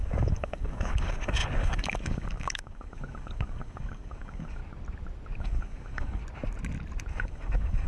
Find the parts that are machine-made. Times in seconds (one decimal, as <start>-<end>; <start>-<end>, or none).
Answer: 0.0-4.6; 5.4-6.2; 7.1-7.9